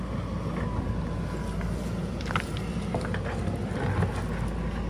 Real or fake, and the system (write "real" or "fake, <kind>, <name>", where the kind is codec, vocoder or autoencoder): real